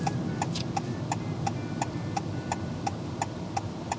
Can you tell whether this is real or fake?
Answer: real